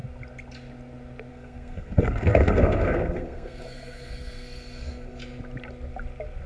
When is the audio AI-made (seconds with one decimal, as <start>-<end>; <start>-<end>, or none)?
1.3-5.2